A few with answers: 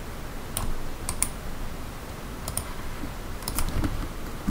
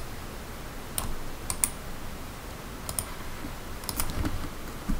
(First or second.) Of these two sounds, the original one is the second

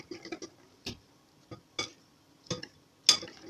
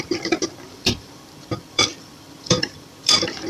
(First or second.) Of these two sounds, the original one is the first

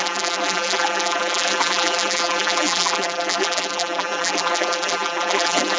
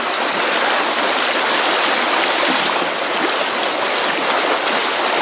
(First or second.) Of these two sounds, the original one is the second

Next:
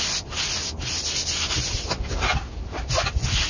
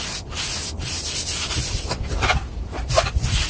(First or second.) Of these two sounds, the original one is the first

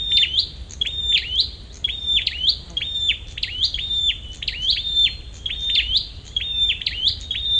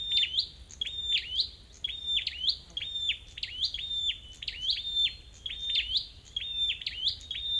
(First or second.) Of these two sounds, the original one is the second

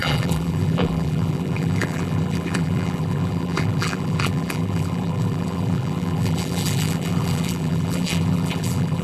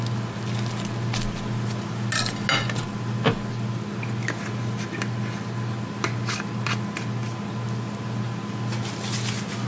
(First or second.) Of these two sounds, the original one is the second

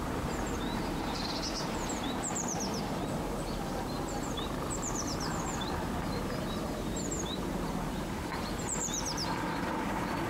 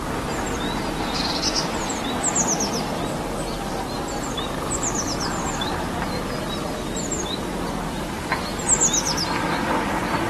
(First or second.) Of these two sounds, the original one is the second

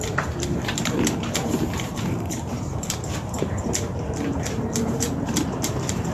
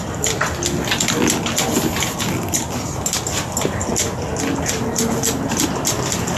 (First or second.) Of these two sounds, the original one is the second